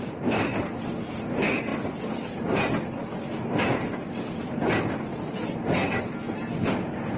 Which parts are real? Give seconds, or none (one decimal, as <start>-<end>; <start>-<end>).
0.0-7.2